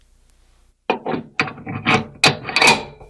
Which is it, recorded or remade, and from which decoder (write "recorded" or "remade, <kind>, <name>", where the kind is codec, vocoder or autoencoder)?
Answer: recorded